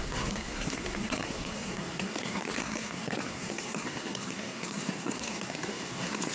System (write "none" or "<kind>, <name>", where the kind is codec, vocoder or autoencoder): codec, SNAC